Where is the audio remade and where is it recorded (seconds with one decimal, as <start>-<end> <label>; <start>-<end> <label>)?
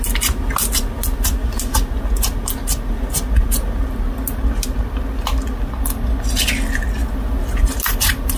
0.0-7.0 recorded; 7.0-8.4 remade